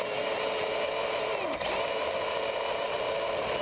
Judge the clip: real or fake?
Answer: real